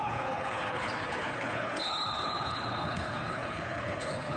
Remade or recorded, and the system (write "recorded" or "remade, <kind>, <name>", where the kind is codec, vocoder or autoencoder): remade, codec, HILCodec